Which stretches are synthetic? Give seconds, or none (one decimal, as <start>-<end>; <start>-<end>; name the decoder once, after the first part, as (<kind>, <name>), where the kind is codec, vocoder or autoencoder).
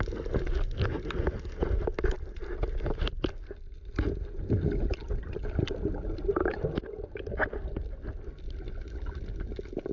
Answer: none